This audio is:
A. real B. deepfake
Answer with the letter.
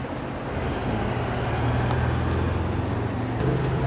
A